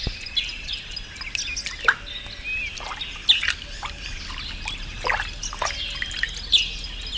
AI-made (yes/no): no